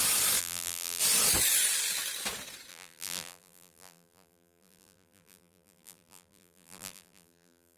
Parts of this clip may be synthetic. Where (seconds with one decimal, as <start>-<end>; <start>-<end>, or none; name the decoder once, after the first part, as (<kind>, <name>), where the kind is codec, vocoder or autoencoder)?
0.4-1.0 (vocoder, BigVGAN v2); 2.7-7.8